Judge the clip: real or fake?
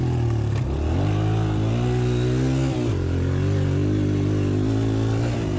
real